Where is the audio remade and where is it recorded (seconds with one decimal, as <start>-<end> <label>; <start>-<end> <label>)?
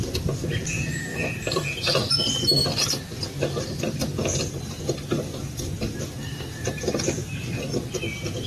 0.0-1.1 recorded; 1.1-2.2 remade; 2.2-4.3 recorded; 4.3-7.0 remade; 7.0-8.5 recorded